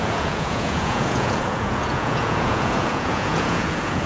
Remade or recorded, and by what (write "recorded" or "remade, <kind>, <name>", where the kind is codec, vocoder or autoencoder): remade, vocoder, Vocos